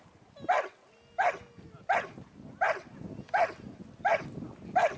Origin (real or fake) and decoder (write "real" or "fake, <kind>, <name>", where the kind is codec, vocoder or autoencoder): real